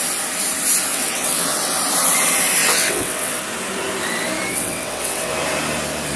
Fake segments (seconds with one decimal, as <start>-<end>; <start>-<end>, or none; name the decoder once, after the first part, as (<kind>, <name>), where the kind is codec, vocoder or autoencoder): 0.9-1.7 (vocoder, WaveNeXt); 2.6-3.4; 4.5-5.3